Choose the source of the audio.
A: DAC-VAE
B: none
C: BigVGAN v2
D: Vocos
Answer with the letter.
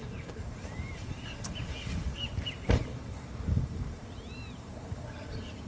C